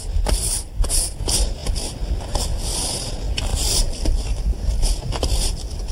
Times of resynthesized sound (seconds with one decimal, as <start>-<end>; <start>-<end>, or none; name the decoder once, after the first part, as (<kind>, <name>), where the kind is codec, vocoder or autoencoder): 1.6-2.9 (vocoder, BigVGAN v2); 3.5-4.9